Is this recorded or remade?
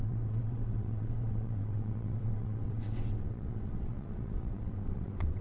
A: remade